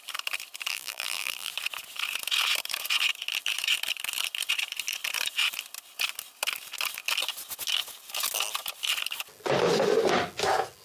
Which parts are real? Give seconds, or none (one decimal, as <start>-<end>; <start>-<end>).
0.0-0.7; 1.5-10.8